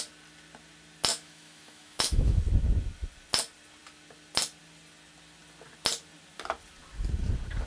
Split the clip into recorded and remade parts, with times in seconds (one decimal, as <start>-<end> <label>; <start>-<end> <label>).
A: 0.0-1.1 recorded; 1.1-2.4 remade; 2.4-7.7 recorded

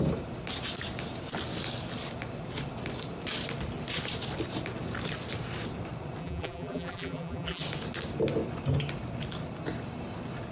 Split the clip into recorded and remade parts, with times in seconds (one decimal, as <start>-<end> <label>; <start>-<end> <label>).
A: 0.0-6.2 recorded; 6.2-7.6 remade; 7.6-10.5 recorded

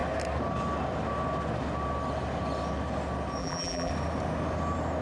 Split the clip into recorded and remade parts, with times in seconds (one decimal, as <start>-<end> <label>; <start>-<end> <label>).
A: 0.0-3.4 recorded; 3.4-3.9 remade; 3.9-5.0 recorded

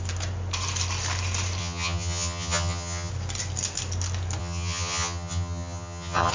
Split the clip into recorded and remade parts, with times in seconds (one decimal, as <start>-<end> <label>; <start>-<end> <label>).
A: 0.0-1.6 recorded; 1.6-3.1 remade; 3.1-4.4 recorded; 4.4-6.3 remade

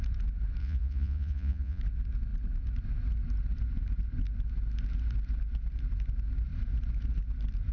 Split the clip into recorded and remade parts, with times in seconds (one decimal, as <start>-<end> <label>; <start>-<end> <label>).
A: 0.0-0.6 recorded; 0.6-1.8 remade; 1.8-7.7 recorded

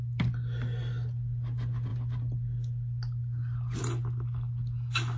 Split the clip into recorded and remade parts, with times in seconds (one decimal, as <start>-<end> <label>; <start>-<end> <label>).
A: 0.0-5.2 recorded

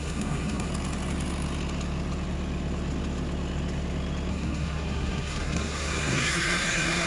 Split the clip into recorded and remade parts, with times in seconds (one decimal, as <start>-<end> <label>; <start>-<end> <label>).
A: 0.0-0.7 remade; 0.7-4.3 recorded; 4.3-7.1 remade

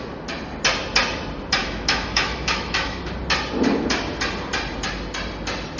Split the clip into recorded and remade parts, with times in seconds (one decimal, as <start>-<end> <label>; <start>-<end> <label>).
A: 0.0-1.6 recorded; 1.6-3.0 remade; 3.0-5.8 recorded